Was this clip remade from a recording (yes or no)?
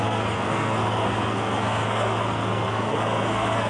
yes